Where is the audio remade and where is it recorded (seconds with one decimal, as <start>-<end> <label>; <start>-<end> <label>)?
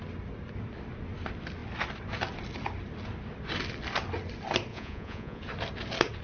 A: 0.0-4.7 recorded; 4.7-5.4 remade; 5.4-6.2 recorded